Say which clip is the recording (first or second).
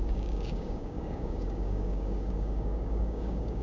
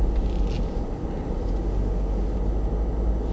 second